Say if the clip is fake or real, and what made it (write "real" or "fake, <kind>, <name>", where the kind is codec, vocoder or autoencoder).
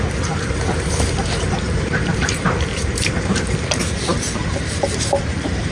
fake, vocoder, BigVGAN v2